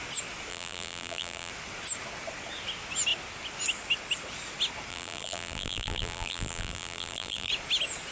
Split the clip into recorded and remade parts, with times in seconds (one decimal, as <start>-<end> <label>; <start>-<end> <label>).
0.0-0.5 recorded; 0.5-1.5 remade; 1.5-4.9 recorded; 4.9-7.5 remade; 7.5-8.1 recorded